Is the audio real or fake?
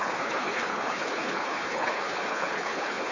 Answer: fake